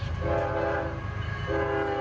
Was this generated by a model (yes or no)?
no